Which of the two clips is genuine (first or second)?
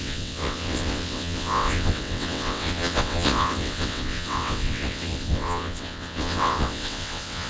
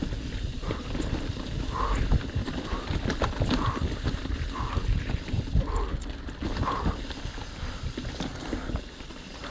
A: second